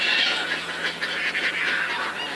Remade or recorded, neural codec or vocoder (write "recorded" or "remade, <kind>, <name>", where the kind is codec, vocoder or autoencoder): recorded